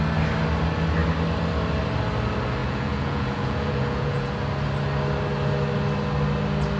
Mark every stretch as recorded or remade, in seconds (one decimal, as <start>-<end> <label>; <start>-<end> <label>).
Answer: 0.0-2.6 recorded; 2.6-4.3 remade; 4.3-6.8 recorded